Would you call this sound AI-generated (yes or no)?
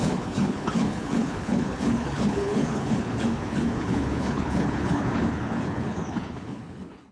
yes